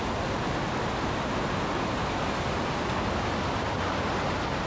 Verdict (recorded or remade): recorded